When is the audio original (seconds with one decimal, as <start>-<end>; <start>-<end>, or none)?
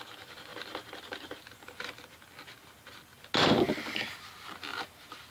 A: 0.0-5.3